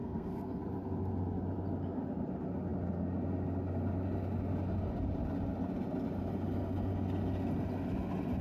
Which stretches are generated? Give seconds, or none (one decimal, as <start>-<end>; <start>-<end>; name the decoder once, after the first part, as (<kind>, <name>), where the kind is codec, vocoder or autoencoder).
0.0-0.6 (codec, SNAC)

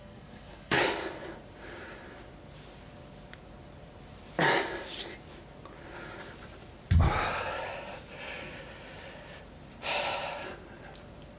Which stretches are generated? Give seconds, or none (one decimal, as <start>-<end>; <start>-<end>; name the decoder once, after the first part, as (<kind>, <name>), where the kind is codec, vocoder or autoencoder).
0.0-0.8 (codec, SNAC)